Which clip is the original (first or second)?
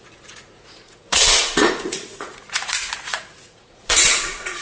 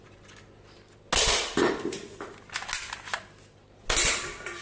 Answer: second